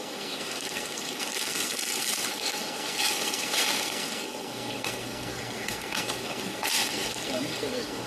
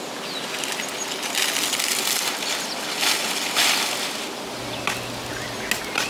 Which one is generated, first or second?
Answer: first